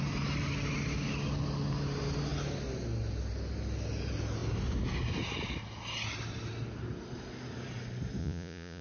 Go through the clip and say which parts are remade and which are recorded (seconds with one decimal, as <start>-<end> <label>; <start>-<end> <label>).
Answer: 0.0-8.2 recorded; 8.2-8.8 remade

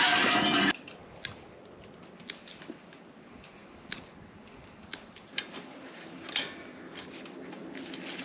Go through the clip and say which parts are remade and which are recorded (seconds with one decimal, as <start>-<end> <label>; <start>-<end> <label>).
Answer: 0.0-8.2 recorded

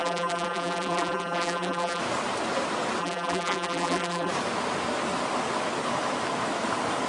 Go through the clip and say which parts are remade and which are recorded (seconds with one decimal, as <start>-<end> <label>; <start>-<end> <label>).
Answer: 0.0-2.0 remade; 2.0-3.0 recorded; 3.0-4.3 remade; 4.3-7.1 recorded

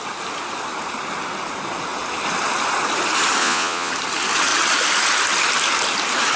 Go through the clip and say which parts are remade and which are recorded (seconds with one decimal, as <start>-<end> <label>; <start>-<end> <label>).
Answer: 0.0-3.4 recorded; 3.4-3.9 remade; 3.9-6.4 recorded

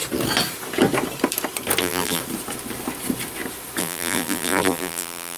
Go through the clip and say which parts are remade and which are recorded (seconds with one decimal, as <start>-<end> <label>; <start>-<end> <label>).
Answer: 0.0-1.8 recorded; 1.8-2.2 remade; 2.2-3.8 recorded; 3.8-5.4 remade

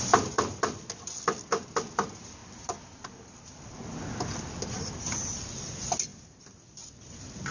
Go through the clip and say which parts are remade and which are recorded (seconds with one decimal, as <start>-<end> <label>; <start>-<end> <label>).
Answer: 0.0-7.5 recorded